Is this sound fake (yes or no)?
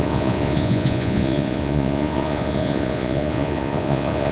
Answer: yes